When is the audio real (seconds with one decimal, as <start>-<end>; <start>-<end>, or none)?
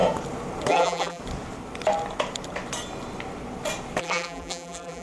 0.0-0.7; 1.2-4.0